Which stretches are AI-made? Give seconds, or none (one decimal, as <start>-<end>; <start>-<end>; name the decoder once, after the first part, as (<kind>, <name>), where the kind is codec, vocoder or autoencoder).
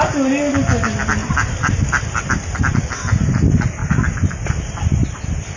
3.8-4.6 (vocoder, BigVGAN v2); 5.0-5.6